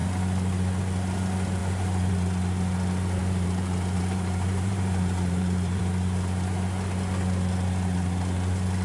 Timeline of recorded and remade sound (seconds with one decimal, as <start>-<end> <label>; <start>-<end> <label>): 0.0-3.2 recorded; 3.2-5.8 remade; 5.8-8.8 recorded